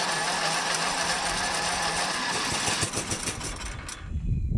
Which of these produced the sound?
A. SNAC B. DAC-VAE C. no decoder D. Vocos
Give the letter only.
C